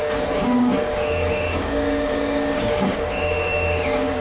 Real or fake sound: fake